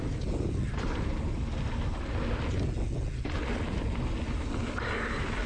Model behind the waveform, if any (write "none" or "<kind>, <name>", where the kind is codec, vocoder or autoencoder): none